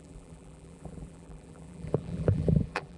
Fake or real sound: fake